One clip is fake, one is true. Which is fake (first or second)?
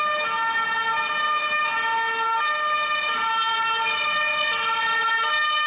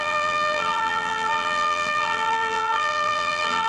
second